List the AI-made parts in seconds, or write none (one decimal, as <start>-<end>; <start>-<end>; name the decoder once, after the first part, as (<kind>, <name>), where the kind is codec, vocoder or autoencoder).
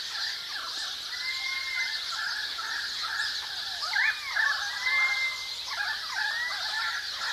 none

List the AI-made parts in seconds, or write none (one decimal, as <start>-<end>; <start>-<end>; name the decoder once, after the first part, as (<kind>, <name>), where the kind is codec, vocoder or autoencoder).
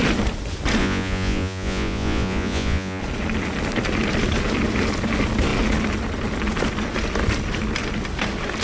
0.8-3.0 (vocoder, Vocos)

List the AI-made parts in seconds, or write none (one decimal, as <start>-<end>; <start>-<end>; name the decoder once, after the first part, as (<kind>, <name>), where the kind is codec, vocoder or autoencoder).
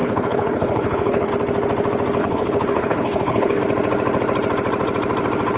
0.0-1.3 (codec, HILCodec); 2.2-3.6